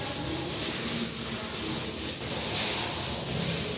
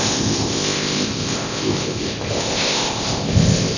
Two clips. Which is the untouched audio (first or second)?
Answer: first